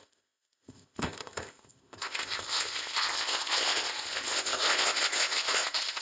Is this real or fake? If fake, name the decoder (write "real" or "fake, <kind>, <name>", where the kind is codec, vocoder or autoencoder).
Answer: fake, codec, ZipCodec